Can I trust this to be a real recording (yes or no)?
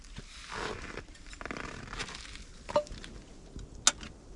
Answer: yes